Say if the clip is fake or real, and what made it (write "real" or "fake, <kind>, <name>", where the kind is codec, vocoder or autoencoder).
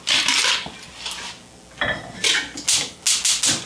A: real